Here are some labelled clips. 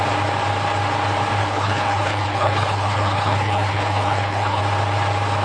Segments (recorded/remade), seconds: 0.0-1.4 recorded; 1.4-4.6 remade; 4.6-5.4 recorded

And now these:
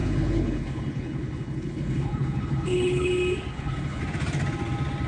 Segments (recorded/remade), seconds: 0.0-3.1 remade; 3.1-3.5 recorded; 3.5-4.0 remade; 4.0-5.1 recorded